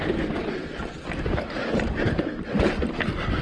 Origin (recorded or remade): recorded